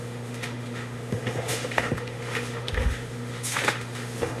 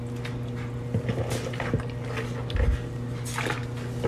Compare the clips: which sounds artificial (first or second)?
first